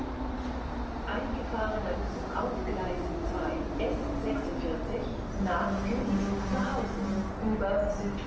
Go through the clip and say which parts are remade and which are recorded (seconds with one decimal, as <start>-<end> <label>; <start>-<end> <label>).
0.0-8.3 recorded